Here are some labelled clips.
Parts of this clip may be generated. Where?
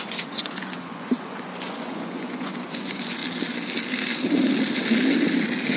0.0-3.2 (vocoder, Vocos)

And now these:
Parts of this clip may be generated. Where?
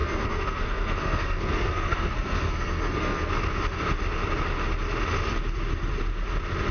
0.0-3.3 (codec, SNAC)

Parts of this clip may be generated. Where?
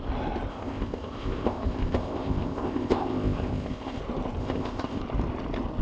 0.5-4.0 (codec, ZipCodec); 4.4-5.0